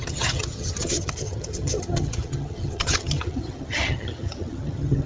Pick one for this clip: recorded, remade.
remade